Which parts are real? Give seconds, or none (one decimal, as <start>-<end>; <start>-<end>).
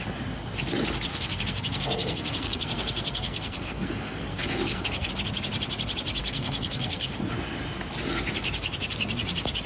0.0-1.1; 5.1-6.2; 7.2-9.7